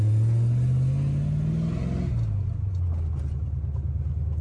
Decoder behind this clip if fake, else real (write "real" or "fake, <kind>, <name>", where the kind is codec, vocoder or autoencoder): real